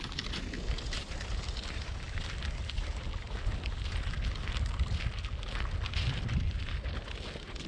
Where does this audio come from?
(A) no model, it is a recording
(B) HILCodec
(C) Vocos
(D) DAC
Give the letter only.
A